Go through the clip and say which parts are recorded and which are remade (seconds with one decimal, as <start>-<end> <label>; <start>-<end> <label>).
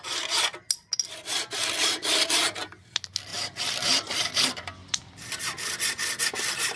0.0-6.8 recorded